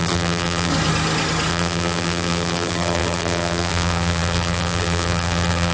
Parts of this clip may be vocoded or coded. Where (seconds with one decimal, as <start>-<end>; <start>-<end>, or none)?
0.0-0.7; 1.5-5.7